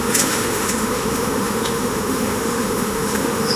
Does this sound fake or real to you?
fake